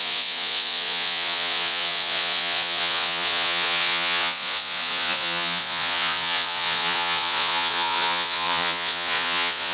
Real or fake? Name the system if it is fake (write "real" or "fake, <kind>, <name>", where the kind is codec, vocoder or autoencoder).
fake, vocoder, Vocos